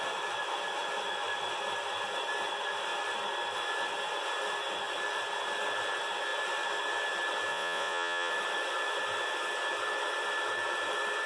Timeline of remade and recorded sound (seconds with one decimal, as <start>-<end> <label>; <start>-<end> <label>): 0.0-7.5 recorded; 7.5-8.3 remade; 8.3-11.3 recorded